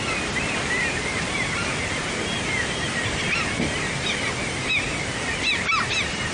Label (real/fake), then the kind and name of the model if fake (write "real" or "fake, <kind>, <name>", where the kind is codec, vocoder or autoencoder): real